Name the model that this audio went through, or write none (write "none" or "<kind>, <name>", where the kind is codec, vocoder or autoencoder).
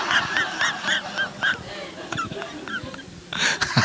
none